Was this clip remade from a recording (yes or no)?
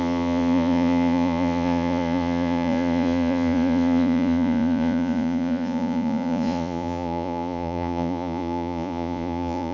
yes